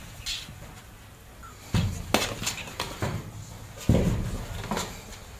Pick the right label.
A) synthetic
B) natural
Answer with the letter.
B